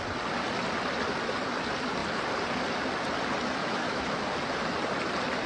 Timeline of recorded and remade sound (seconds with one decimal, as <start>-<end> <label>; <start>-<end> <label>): 0.0-3.6 recorded; 3.6-4.2 remade; 4.2-5.5 recorded